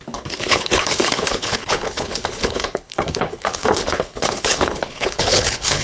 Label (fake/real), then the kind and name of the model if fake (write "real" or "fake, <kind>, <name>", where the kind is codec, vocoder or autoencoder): fake, codec, HILCodec